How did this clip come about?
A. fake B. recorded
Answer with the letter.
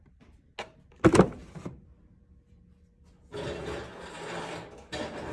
B